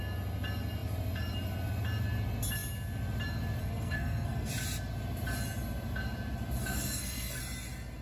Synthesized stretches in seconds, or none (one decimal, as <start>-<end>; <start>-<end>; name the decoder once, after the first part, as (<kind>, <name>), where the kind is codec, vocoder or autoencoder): 3.6-4.5 (codec, SNAC); 6.6-7.4